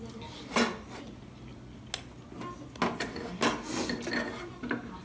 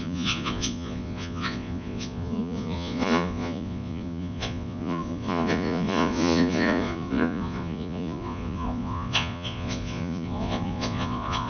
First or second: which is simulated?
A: second